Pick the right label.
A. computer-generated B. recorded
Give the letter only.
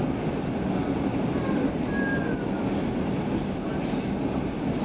B